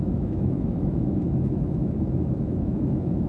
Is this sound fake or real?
fake